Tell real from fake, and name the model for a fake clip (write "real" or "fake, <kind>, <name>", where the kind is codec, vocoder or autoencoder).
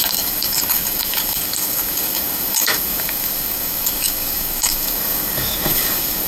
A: fake, codec, DAC